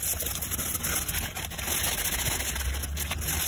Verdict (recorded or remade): recorded